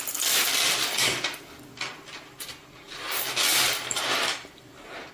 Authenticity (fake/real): fake